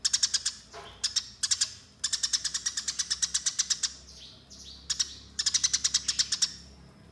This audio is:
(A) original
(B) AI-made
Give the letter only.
A